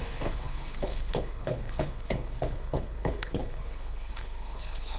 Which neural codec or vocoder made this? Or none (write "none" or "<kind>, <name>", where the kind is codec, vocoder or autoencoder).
codec, HILCodec